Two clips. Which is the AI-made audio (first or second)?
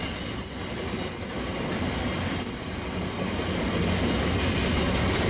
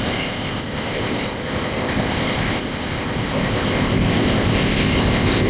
second